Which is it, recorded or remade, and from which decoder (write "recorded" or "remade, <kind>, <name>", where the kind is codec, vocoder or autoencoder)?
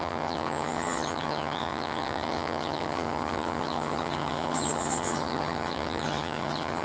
remade, vocoder, HiFi-GAN